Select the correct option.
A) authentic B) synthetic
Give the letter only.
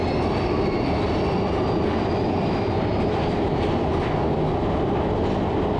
A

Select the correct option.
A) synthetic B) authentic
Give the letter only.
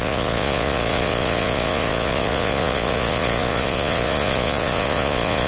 A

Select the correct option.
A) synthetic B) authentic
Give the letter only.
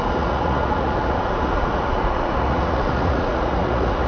A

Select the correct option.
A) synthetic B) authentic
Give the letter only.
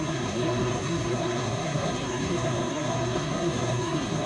A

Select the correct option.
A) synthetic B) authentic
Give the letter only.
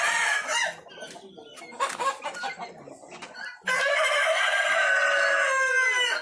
B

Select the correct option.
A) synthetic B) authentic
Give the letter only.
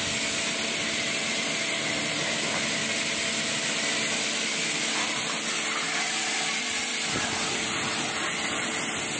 B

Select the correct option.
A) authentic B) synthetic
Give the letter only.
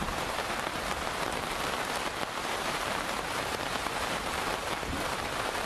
B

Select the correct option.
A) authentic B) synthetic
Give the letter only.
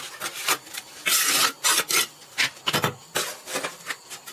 A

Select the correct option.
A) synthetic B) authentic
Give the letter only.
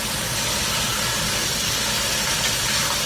B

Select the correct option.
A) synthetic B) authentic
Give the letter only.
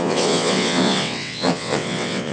A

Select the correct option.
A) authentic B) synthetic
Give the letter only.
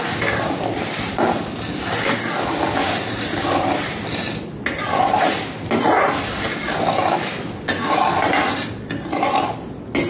A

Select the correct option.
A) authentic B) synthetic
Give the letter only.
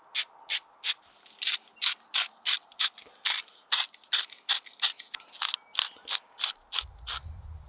A